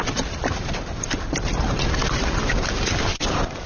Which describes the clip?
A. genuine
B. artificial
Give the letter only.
A